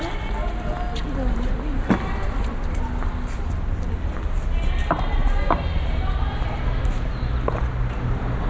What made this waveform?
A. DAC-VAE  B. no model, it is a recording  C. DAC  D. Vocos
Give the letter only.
B